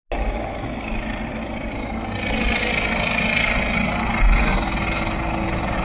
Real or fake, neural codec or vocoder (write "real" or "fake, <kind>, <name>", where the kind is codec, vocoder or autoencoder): real